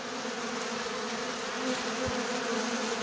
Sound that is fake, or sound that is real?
real